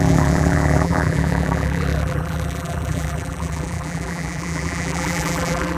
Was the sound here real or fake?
fake